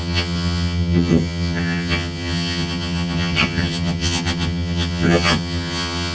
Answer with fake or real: fake